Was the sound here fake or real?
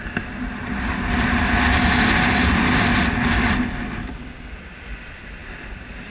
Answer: real